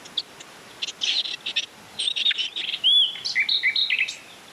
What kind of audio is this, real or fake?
real